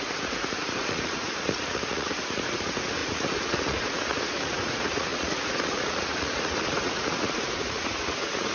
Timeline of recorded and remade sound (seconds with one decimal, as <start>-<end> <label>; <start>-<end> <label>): 0.0-8.5 remade